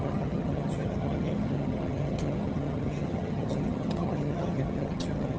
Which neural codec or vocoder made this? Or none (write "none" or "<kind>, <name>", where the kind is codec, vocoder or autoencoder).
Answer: vocoder, HiFi-GAN